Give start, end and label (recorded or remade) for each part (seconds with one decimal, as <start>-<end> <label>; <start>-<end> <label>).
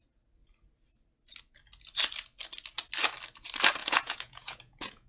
0.0-3.8 recorded; 3.8-5.1 remade